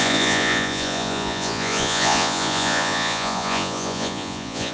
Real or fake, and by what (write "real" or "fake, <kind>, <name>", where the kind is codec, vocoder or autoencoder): fake, vocoder, Vocos